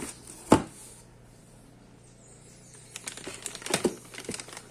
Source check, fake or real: real